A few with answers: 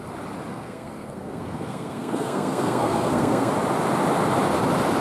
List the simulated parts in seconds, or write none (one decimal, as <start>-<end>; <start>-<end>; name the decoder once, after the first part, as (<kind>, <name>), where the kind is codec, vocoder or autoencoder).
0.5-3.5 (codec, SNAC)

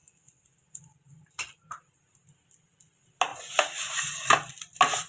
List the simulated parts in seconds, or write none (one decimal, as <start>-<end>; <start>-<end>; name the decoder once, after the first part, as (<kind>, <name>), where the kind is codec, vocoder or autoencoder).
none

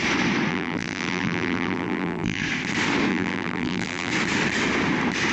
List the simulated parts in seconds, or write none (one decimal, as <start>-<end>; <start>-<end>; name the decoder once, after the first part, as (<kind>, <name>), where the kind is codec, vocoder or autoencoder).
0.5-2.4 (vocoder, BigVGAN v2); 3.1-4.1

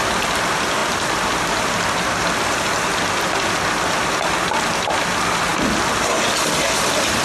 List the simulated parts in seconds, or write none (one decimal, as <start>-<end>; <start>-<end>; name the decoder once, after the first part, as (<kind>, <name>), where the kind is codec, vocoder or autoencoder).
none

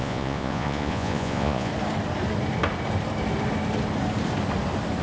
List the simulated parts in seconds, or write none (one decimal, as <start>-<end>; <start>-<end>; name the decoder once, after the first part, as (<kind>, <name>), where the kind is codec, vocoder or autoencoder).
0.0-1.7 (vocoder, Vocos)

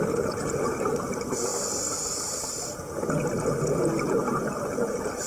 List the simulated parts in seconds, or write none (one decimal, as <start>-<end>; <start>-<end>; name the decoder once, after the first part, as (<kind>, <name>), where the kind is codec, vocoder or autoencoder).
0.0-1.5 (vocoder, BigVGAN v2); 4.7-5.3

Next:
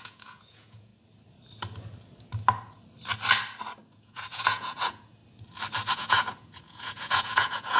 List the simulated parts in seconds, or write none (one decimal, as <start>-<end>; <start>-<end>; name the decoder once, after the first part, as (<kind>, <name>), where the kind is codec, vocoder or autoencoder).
0.0-0.9 (vocoder, Vocos); 3.8-5.2; 5.9-7.8